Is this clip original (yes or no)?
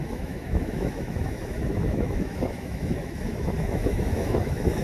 no